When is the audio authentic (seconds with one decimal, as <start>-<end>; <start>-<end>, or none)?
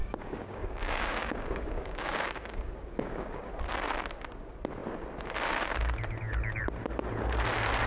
3.5-7.9